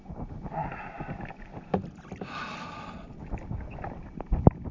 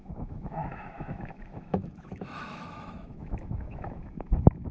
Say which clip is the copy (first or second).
second